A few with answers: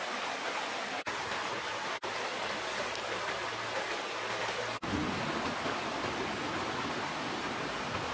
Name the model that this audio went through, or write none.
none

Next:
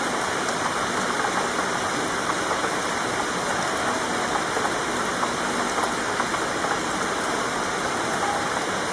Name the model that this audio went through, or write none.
none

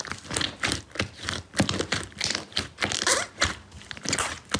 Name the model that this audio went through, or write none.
none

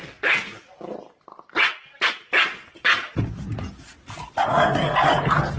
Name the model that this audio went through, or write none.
none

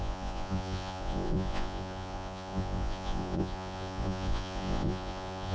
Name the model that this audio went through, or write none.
vocoder, Vocos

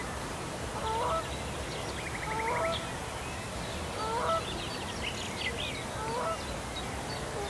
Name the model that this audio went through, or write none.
none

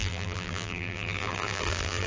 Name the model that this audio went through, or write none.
vocoder, BigVGAN v2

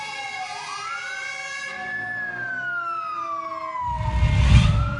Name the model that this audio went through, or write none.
none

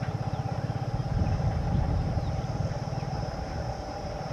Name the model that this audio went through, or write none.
vocoder, BigVGAN v2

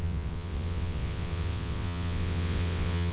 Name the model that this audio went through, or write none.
vocoder, WaveNeXt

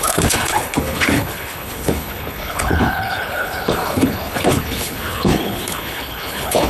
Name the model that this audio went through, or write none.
codec, HILCodec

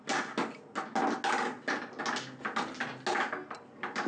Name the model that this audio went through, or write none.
none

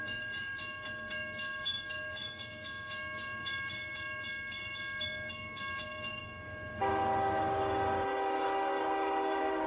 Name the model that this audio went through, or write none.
codec, DAC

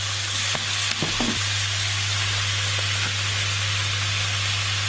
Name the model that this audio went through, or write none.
none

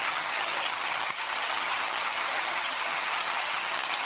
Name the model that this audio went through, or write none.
vocoder, HiFi-GAN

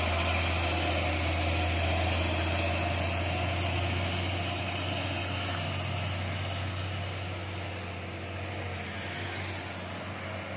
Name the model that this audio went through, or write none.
none